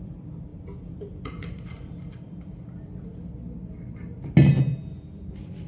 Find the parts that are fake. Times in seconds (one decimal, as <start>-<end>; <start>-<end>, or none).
0.5-2.3; 4.7-5.3